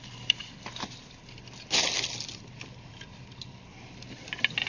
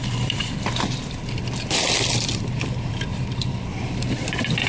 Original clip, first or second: first